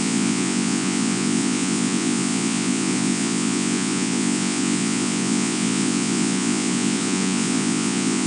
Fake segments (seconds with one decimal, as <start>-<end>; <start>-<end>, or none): 0.0-8.3